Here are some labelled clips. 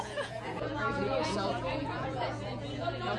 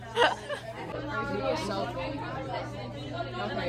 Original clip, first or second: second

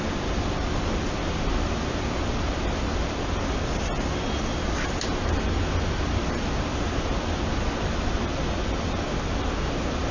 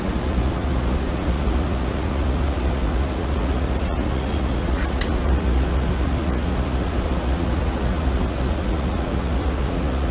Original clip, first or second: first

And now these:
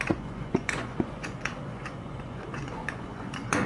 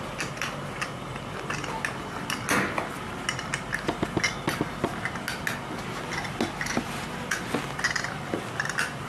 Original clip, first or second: second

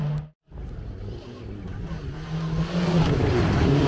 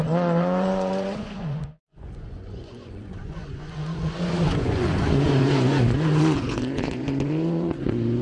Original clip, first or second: first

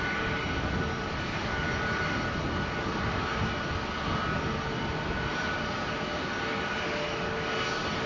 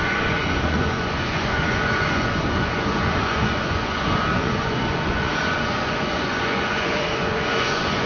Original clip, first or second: first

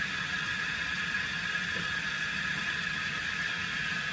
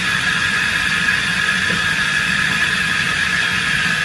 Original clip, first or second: first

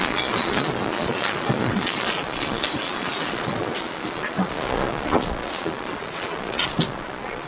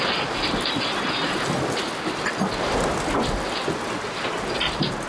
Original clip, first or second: second